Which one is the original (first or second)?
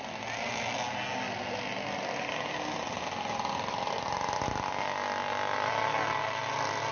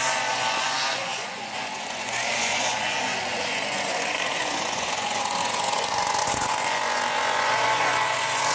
first